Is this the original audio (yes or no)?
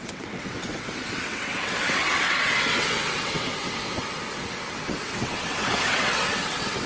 no